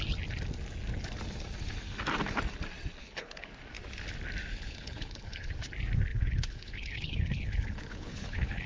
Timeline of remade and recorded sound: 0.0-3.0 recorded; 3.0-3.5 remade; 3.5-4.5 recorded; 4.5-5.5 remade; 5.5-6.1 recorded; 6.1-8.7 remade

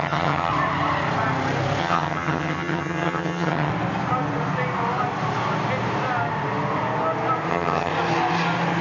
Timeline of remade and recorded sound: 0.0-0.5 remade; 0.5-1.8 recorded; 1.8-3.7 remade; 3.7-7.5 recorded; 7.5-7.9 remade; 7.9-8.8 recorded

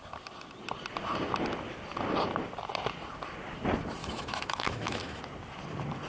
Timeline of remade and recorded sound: 0.0-4.0 recorded; 4.0-5.2 remade; 5.2-6.1 recorded

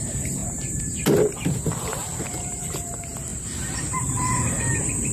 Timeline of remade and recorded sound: 0.0-5.1 remade

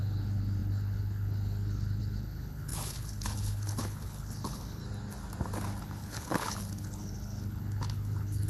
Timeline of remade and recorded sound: 0.0-4.8 remade; 4.8-5.8 recorded; 5.8-8.5 remade

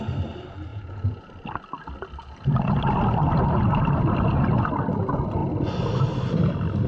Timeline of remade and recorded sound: 0.0-0.7 recorded; 0.7-1.2 remade; 1.2-6.9 recorded

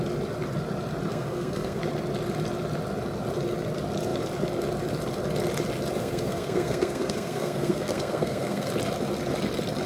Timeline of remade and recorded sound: 0.0-1.1 recorded; 1.1-1.8 remade; 1.8-6.0 recorded; 6.0-8.7 remade; 8.7-9.9 recorded